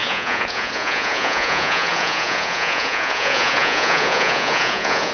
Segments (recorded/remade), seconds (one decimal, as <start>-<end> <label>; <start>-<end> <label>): 0.0-5.1 remade